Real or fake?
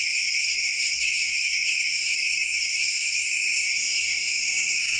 fake